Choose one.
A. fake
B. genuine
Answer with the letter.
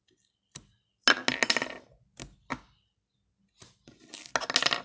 B